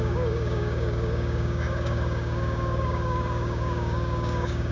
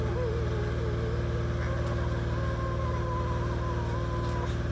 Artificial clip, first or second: first